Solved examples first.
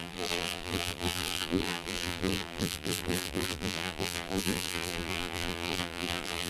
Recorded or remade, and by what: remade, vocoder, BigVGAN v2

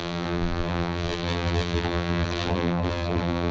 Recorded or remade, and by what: remade, vocoder, BigVGAN v2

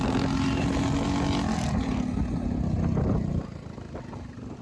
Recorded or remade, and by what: recorded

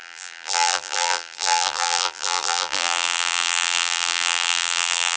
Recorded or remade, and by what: remade, vocoder, BigVGAN v2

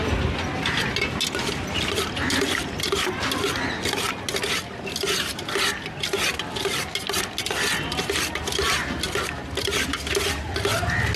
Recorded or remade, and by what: recorded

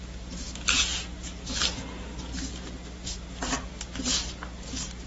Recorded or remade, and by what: recorded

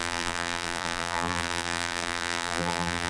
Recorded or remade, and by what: remade, vocoder, BigVGAN v2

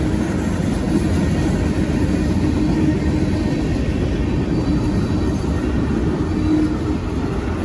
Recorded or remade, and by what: recorded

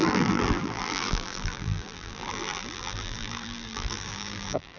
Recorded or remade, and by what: remade, vocoder, BigVGAN v2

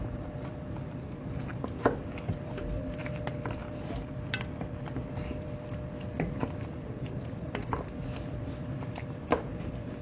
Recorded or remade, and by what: remade, vocoder, BigVGAN v2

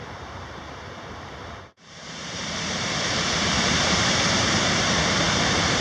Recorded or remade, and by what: remade, vocoder, BigVGAN v2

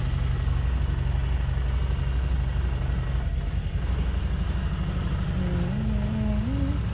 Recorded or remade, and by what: recorded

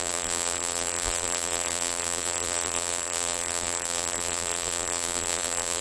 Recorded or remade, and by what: remade, vocoder, BigVGAN v2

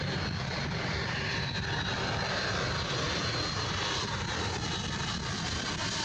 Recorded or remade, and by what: remade, vocoder, BigVGAN v2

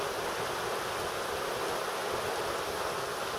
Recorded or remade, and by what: recorded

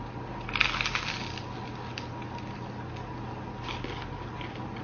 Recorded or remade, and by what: recorded